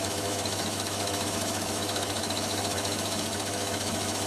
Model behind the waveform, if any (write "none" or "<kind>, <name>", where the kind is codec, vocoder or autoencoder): autoencoder, DAC-VAE